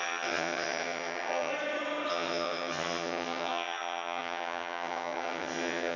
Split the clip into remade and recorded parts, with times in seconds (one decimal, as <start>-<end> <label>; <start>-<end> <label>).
0.0-1.5 remade; 1.5-2.1 recorded; 2.1-6.0 remade